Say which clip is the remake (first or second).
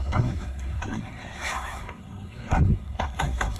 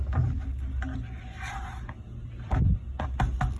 first